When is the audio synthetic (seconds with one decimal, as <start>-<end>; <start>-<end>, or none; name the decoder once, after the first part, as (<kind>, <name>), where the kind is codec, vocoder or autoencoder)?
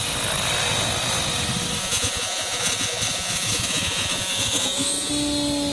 1.8-5.1 (vocoder, Vocos)